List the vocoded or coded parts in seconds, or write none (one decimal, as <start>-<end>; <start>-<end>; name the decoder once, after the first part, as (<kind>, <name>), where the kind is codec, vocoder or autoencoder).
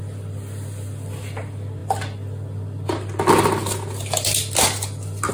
none